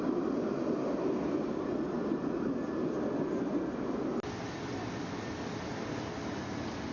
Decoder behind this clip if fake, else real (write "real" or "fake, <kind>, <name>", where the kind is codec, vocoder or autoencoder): real